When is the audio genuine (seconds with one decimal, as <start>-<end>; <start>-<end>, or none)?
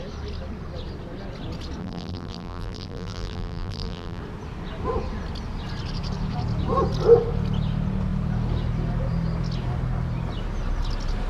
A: 0.0-1.8; 4.2-11.3